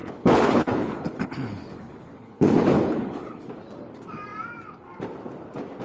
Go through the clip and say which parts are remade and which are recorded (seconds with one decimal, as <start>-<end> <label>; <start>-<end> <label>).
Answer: 0.0-3.5 remade; 3.5-5.8 recorded

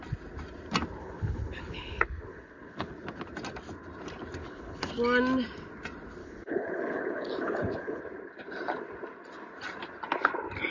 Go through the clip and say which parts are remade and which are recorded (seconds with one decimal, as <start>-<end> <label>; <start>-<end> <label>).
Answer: 0.0-1.0 recorded; 1.0-2.9 remade; 2.9-4.4 recorded; 4.4-4.9 remade; 4.9-6.2 recorded; 6.2-8.0 remade; 8.0-10.7 recorded

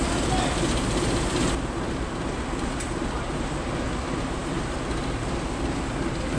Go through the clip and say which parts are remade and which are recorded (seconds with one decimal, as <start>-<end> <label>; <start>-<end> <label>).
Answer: 0.0-6.4 recorded

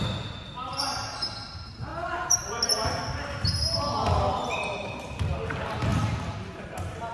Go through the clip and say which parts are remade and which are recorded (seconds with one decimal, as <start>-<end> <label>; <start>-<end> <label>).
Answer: 0.0-7.1 recorded